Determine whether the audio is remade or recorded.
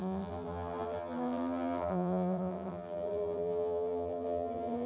remade